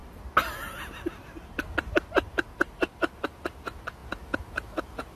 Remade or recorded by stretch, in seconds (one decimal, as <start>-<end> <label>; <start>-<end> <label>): 0.0-5.2 recorded